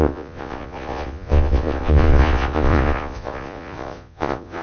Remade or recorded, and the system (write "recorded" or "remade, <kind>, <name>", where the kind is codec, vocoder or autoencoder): remade, vocoder, Vocos